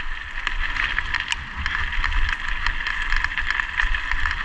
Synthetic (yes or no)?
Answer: no